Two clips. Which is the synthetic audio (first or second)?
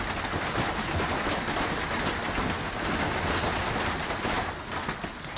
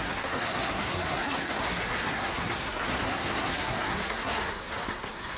second